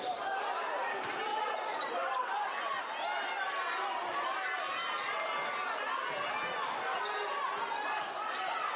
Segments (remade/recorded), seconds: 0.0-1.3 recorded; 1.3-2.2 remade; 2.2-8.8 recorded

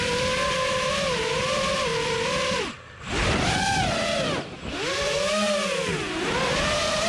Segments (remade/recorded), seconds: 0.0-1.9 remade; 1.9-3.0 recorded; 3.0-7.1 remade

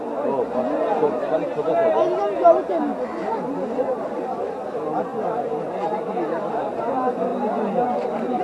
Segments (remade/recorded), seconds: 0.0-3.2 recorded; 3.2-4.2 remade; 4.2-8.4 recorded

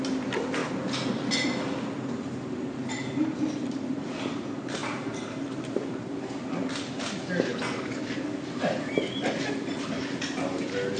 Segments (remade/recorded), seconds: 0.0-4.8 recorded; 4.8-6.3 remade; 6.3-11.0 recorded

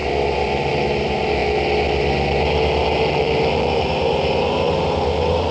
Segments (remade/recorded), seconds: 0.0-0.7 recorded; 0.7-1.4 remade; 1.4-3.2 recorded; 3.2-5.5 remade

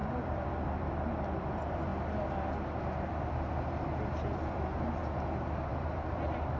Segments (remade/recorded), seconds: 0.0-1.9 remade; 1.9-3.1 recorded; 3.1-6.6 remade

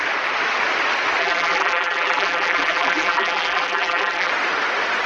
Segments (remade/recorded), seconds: 0.0-1.2 recorded; 1.2-4.3 remade; 4.3-5.1 recorded

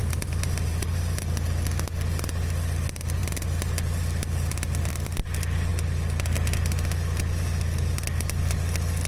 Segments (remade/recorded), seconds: 0.0-1.2 remade; 1.2-9.1 recorded